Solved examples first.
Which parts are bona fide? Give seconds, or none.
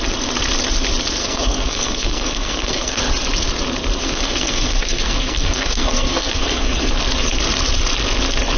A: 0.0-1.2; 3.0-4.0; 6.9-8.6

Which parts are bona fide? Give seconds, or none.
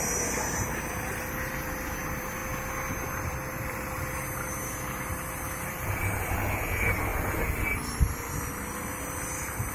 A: 2.4-3.0; 7.1-8.0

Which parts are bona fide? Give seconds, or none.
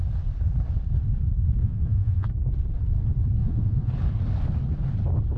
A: 0.0-1.6; 2.3-3.4; 3.9-5.4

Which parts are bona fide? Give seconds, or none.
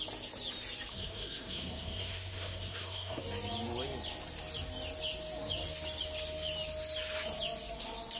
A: 0.0-0.9; 3.2-8.2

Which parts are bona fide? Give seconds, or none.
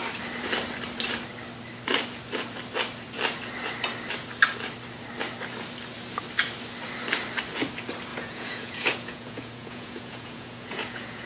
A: 0.0-8.1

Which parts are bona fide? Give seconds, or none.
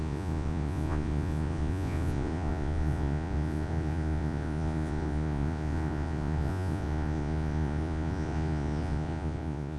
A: none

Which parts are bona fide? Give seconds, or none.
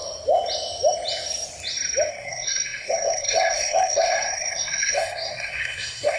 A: 0.0-2.1